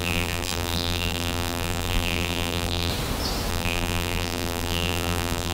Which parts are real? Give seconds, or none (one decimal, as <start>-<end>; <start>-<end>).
2.9-3.5